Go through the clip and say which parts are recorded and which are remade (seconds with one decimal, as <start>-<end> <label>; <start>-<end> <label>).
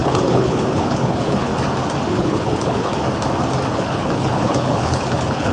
0.0-1.5 remade; 1.5-2.1 recorded; 2.1-3.0 remade; 3.0-3.7 recorded; 3.7-5.5 remade